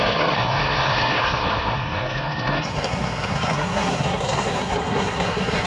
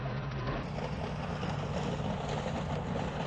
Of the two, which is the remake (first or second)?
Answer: first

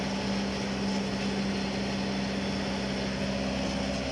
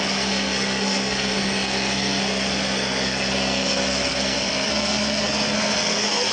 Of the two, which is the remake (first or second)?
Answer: second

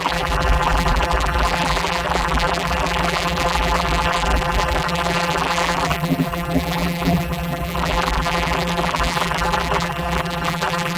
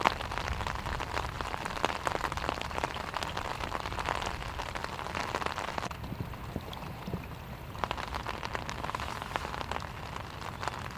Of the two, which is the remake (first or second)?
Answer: first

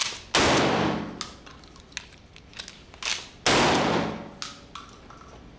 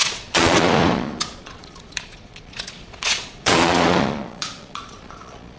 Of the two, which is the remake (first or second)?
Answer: second